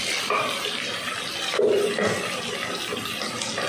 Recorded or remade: recorded